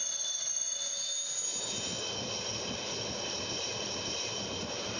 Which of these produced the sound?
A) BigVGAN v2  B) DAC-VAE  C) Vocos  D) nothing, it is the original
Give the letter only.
D